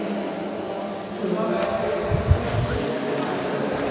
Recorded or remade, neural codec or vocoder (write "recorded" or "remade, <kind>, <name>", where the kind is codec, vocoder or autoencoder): recorded